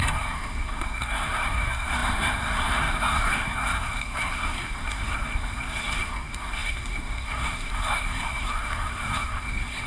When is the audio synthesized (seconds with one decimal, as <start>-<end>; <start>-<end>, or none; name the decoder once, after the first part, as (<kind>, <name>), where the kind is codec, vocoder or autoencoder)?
0.0-9.9 (codec, SNAC)